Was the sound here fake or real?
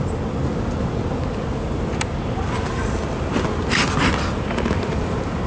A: real